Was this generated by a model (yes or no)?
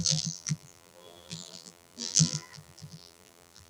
yes